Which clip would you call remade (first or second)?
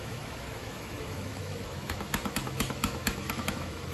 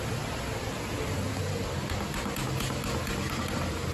first